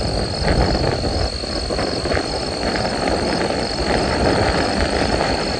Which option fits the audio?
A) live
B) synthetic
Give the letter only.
B